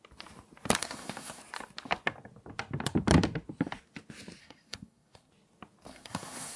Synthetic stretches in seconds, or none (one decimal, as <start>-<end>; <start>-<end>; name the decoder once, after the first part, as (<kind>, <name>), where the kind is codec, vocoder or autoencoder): 0.8-1.4 (codec, SNAC); 4.4-5.3; 5.9-6.6